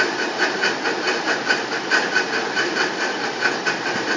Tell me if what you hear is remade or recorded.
remade